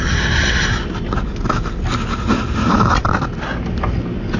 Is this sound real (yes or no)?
yes